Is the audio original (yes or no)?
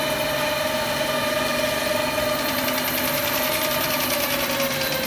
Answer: yes